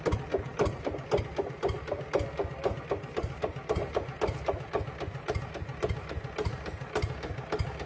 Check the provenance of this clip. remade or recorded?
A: recorded